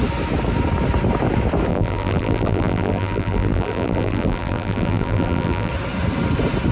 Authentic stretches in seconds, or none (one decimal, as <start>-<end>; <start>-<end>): 0.0-1.7; 5.7-6.7